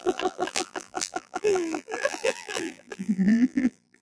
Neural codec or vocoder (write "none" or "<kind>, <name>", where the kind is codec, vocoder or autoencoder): vocoder, BigVGAN v2